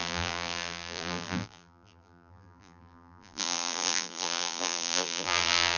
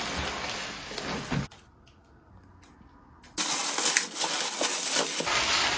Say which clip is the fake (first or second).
first